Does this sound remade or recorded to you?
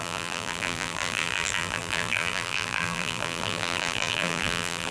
remade